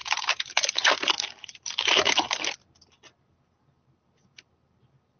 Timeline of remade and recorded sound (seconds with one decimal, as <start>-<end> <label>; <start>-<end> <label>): 0.0-2.3 remade; 2.3-5.2 recorded